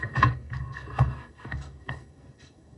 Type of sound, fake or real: fake